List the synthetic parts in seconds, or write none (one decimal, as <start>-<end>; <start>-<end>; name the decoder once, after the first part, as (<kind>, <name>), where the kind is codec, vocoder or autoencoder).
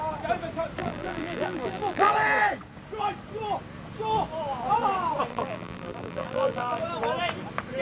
0.8-2.1 (vocoder, BigVGAN v2); 5.3-6.8